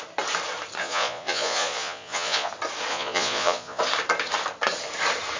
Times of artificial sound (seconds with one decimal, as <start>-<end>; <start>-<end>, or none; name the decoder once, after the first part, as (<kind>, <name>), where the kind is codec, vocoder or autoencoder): 0.8-2.5 (vocoder, Vocos); 2.9-3.8